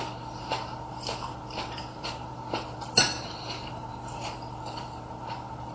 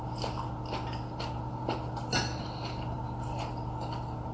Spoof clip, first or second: first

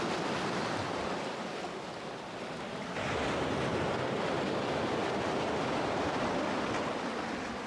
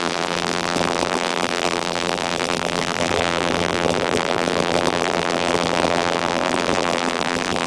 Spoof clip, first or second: second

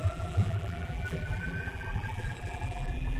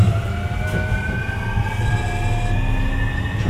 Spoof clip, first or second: first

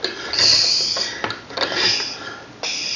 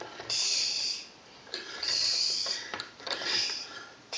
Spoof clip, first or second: second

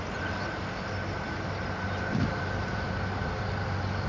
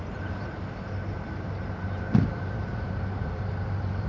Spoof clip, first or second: second